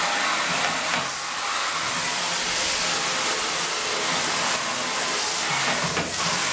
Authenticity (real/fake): real